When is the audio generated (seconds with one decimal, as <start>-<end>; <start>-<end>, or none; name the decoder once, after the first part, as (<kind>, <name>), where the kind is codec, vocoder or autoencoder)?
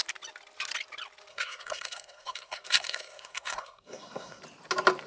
1.3-4.4 (codec, SNAC)